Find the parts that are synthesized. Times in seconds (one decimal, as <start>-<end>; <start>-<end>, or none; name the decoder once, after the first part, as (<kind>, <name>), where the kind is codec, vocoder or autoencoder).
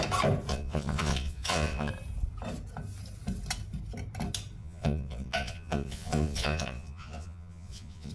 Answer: 0.5-1.9 (vocoder, Vocos); 4.6-8.1